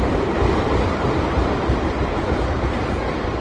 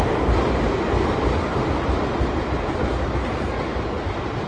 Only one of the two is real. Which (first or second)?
second